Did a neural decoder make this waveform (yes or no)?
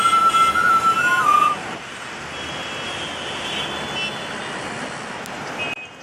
no